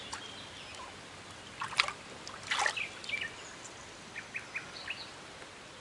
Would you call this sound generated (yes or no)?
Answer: no